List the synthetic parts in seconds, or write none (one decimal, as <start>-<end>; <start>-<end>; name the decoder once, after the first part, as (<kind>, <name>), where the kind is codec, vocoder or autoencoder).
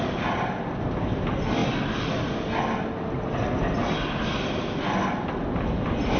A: none